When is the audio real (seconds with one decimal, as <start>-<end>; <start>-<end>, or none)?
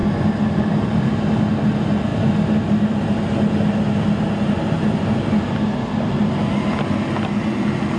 0.0-8.0